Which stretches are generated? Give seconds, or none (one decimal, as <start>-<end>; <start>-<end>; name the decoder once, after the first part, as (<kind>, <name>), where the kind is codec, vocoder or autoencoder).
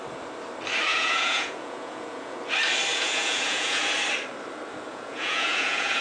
0.9-2.4 (vocoder, Vocos); 2.9-3.8; 4.9-6.0